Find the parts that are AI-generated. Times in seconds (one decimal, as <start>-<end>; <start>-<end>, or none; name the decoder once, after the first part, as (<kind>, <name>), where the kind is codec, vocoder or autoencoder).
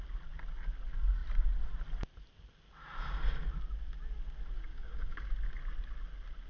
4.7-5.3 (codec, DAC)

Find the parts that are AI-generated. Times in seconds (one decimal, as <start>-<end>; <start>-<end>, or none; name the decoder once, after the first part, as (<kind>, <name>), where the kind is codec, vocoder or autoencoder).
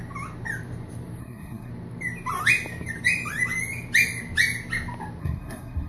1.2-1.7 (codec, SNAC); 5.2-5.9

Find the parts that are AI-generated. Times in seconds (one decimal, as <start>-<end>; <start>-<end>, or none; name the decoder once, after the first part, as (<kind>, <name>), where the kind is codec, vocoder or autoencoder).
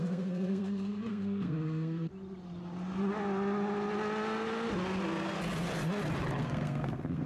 0.0-2.1 (codec, SNAC); 6.4-7.3